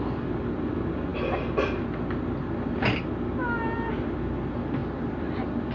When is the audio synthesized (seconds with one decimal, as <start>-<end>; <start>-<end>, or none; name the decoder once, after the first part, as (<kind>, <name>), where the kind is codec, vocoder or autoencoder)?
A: none